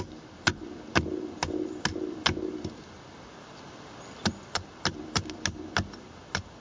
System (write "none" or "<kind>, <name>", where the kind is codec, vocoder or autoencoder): none